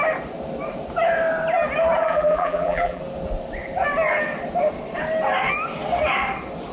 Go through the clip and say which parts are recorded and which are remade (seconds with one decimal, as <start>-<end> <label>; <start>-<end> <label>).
0.0-2.0 recorded; 2.0-3.0 remade; 3.0-6.7 recorded